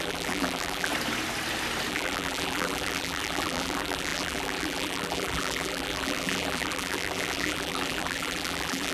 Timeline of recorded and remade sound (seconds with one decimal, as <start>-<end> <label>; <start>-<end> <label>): 0.0-0.9 remade; 0.9-1.9 recorded; 1.9-8.9 remade